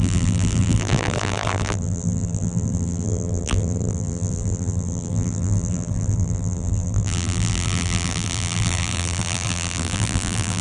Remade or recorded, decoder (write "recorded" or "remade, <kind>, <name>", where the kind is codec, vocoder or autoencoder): remade, vocoder, BigVGAN v2